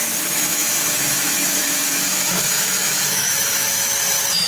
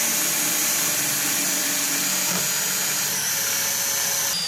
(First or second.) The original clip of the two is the second